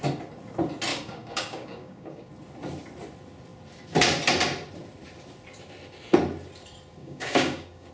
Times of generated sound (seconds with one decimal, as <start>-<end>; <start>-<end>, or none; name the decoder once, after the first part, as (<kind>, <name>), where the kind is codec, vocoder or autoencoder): 0.9-2.3 (codec, DAC); 7.0-7.9